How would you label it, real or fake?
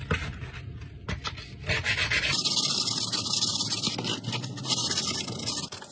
real